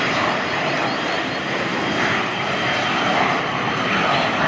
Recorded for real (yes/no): no